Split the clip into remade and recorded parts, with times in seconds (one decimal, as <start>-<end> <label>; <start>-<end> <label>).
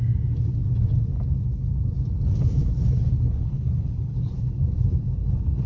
0.0-2.6 recorded; 2.6-4.2 remade; 4.2-5.7 recorded